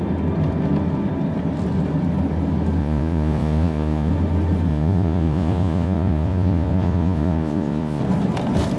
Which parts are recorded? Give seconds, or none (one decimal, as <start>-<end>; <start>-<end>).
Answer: 0.0-2.8; 4.1-4.7; 8.0-8.8